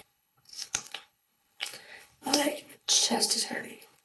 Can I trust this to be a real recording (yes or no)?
no